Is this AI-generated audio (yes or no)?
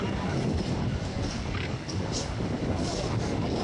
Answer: yes